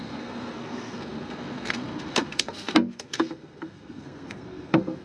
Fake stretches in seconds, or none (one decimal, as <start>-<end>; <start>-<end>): 0.0-5.0